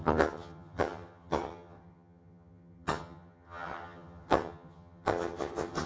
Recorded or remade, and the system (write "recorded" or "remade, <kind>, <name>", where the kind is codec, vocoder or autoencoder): remade, vocoder, HiFi-GAN